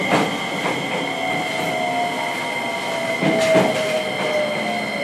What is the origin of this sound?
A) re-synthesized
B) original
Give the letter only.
B